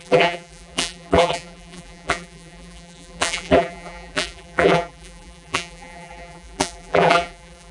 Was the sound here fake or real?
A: fake